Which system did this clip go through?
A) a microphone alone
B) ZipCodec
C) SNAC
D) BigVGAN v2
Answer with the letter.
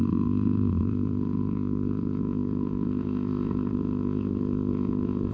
B